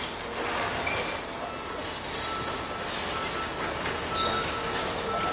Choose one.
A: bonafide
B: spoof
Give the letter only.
A